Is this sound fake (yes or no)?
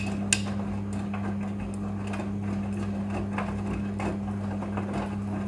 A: no